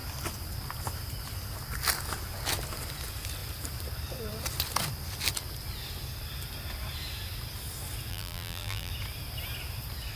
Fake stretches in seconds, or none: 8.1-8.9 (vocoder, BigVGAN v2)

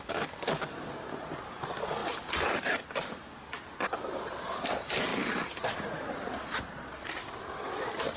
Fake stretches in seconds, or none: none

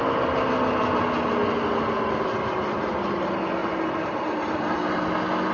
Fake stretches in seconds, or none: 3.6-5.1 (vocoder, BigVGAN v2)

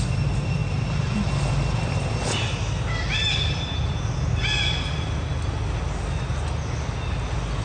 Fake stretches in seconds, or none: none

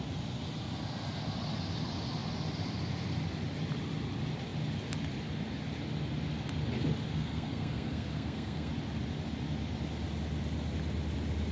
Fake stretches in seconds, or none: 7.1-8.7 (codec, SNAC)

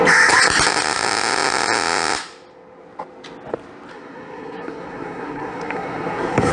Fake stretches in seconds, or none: 3.9-6.5 (codec, SNAC)